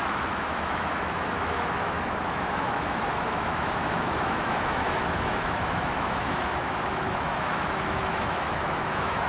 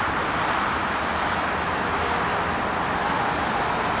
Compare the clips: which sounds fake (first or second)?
first